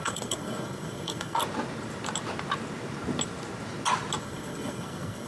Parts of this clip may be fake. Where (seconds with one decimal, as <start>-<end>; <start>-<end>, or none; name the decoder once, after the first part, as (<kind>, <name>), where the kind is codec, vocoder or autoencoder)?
0.0-1.4 (codec, SNAC); 4.2-5.3